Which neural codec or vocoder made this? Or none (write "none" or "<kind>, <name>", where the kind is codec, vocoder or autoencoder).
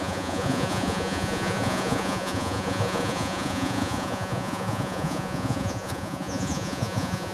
vocoder, Vocos